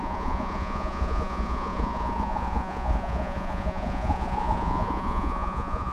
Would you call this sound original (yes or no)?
no